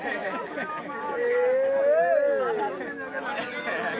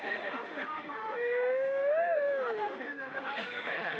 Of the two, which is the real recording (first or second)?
first